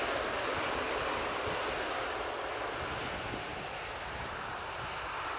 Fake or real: real